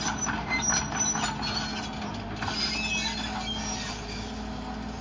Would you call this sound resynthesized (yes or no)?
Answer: no